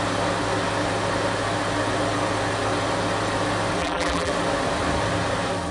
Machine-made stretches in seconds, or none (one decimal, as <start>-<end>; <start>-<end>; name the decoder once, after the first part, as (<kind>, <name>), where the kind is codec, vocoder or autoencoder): 3.8-4.3 (vocoder, BigVGAN v2)